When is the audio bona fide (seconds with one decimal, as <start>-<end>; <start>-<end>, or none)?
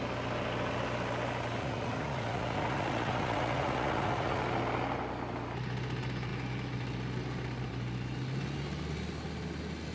0.0-1.6; 4.4-9.9